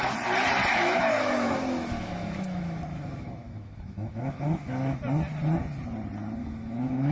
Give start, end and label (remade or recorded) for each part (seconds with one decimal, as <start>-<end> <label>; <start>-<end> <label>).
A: 0.0-0.7 recorded; 0.7-5.0 remade; 5.0-6.4 recorded; 6.4-7.1 remade